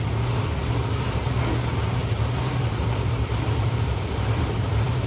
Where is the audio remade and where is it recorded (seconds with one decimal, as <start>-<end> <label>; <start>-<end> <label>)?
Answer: 0.0-2.0 recorded; 2.0-5.1 remade